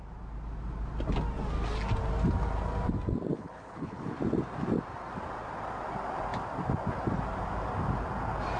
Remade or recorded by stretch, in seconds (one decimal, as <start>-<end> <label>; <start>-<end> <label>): 0.0-3.3 recorded; 3.3-4.2 remade; 4.2-8.6 recorded